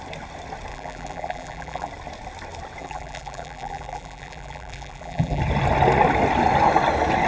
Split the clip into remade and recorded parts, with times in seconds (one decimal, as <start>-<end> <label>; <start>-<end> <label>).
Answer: 0.0-0.7 recorded; 0.7-1.9 remade; 1.9-2.8 recorded; 2.8-5.4 remade; 5.4-7.3 recorded